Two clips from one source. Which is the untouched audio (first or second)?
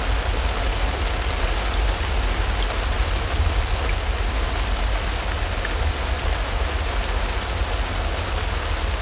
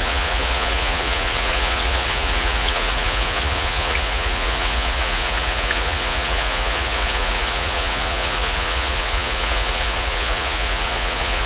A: first